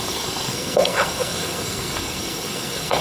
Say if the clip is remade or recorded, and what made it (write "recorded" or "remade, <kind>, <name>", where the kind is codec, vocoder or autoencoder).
remade, codec, SNAC